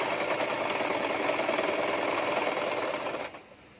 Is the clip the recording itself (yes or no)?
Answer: yes